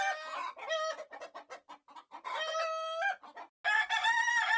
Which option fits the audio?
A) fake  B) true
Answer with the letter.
B